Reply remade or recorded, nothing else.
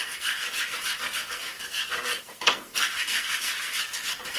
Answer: remade